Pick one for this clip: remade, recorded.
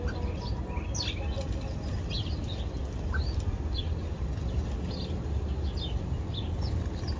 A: recorded